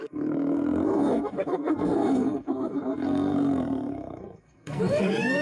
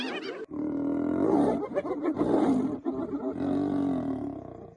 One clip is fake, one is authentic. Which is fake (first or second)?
first